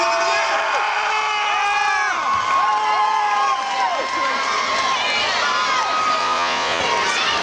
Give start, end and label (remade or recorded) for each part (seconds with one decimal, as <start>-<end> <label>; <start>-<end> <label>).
0.0-6.2 recorded; 6.2-6.8 remade; 6.8-7.4 recorded